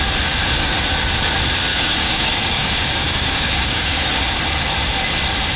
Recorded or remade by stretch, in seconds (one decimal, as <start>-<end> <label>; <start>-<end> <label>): 0.0-1.7 recorded; 1.7-4.2 remade; 4.2-5.6 recorded